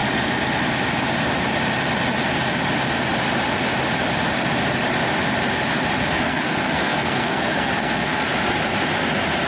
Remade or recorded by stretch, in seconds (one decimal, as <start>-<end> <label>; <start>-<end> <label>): 0.0-6.0 recorded; 6.0-8.2 remade; 8.2-9.5 recorded